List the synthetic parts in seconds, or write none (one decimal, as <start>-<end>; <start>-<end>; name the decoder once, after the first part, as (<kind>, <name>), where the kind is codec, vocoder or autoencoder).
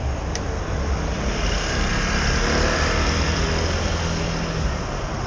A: none